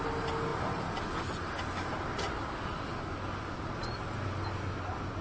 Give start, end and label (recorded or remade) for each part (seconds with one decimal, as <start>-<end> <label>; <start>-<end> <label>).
0.0-5.2 recorded